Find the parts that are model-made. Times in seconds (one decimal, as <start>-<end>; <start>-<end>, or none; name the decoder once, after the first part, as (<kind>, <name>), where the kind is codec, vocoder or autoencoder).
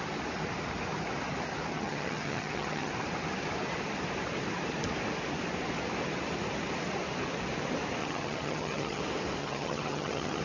1.7-2.9 (vocoder, HiFi-GAN); 8.0-9.0; 9.4-10.4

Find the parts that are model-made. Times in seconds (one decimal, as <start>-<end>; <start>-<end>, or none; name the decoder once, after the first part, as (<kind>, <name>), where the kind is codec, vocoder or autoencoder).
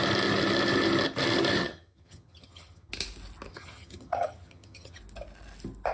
1.6-2.9 (vocoder, HiFi-GAN); 3.5-5.0